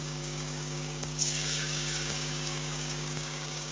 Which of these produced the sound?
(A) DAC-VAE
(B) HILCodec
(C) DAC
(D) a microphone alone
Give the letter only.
C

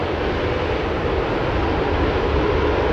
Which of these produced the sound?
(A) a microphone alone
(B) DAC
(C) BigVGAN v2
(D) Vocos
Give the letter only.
A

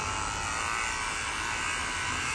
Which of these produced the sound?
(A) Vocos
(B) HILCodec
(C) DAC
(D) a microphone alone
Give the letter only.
D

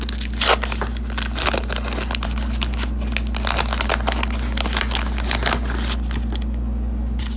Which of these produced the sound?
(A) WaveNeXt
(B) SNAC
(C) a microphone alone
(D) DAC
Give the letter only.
C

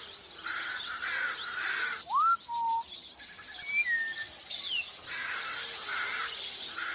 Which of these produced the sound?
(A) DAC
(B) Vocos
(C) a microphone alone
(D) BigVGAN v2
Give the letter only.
C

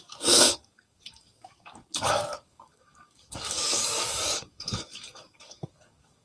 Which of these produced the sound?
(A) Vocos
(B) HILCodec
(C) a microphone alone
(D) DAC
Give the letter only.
D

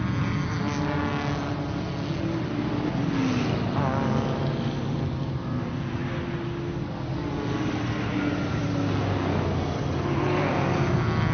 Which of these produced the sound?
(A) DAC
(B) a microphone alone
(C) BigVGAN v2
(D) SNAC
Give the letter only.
B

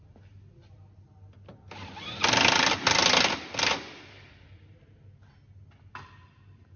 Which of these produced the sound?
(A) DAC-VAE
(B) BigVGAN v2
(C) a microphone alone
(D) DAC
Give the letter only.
C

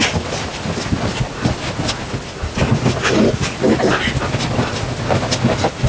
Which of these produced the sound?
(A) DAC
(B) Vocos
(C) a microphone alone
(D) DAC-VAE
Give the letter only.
C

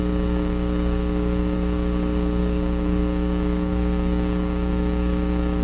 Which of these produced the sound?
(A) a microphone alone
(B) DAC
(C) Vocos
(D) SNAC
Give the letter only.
B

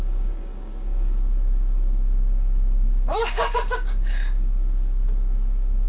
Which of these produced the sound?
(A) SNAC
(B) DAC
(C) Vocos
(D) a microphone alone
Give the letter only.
B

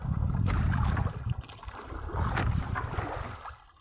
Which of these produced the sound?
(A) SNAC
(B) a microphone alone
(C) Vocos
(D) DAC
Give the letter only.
B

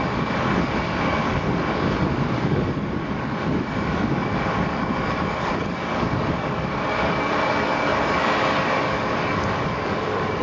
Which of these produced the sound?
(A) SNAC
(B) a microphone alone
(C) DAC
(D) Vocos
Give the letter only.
C